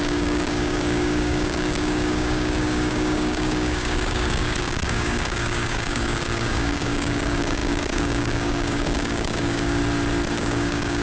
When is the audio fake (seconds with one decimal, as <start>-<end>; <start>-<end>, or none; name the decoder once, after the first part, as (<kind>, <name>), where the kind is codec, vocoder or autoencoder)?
0.0-9.8 (codec, DAC); 10.3-11.0